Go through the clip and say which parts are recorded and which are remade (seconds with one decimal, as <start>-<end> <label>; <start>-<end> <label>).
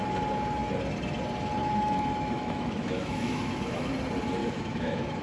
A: 0.0-1.6 recorded; 1.6-3.9 remade; 3.9-4.4 recorded; 4.4-5.2 remade